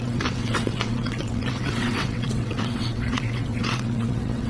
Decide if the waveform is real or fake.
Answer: fake